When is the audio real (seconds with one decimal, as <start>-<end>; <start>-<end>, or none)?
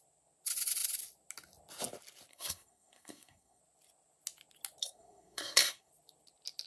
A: 0.0-2.3; 3.6-4.8; 5.9-6.7